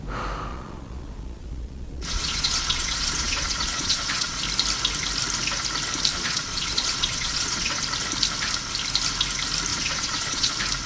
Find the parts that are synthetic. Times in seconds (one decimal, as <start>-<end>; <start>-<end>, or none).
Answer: 0.5-4.4; 6.1-7.8; 9.7-10.5